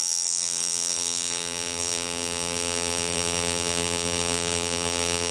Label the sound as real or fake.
fake